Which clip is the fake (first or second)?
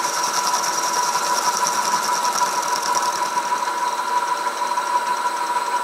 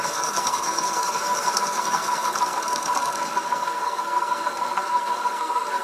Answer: second